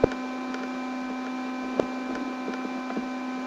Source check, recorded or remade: recorded